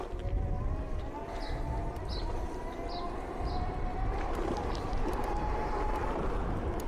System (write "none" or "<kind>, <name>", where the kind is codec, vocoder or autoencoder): none